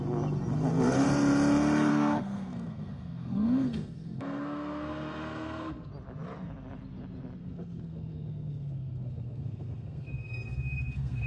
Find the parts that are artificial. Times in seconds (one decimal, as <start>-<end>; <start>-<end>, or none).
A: 1.9-5.9; 7.4-11.3